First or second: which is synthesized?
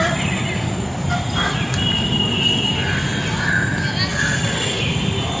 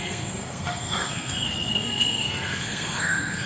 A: second